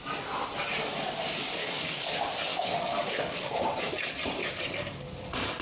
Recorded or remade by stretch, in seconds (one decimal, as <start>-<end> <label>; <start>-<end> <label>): 0.0-1.6 recorded; 1.6-2.1 remade; 2.1-2.5 recorded; 2.5-3.5 remade; 3.5-4.4 recorded; 4.4-5.0 remade; 5.0-5.6 recorded